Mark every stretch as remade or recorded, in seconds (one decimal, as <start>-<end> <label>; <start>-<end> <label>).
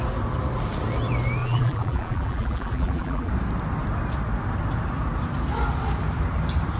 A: 0.0-1.4 recorded; 1.4-3.3 remade; 3.3-6.8 recorded